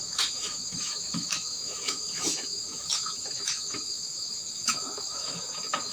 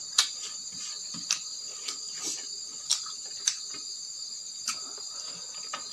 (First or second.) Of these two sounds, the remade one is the first